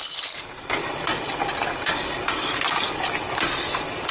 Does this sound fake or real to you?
real